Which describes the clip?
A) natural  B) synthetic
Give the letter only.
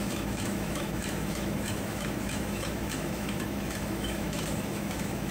B